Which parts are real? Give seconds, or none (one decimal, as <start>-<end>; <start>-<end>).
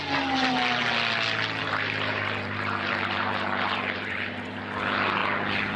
0.0-1.6; 4.6-5.8